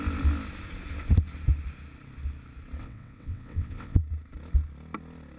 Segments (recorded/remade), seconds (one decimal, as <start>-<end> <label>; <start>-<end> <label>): 0.0-2.8 recorded; 2.8-4.0 remade; 4.0-5.4 recorded